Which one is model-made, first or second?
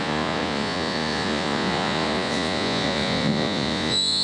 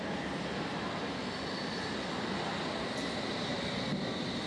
first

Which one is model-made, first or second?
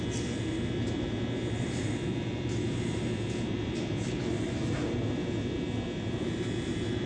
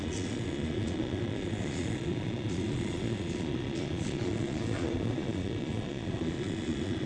second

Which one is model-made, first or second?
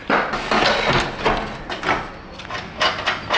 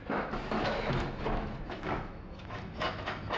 second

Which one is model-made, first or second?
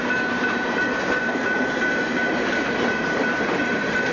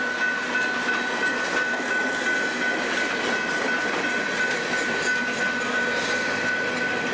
first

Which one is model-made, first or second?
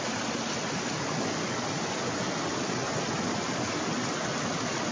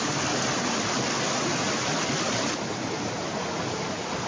second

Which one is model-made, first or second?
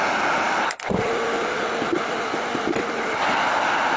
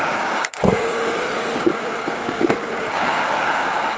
second